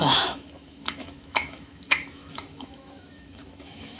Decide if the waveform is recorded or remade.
remade